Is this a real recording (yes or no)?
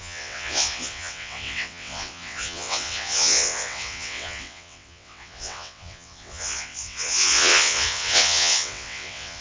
no